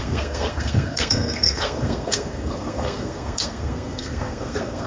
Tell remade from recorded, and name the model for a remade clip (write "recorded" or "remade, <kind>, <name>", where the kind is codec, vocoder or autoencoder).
remade, codec, SNAC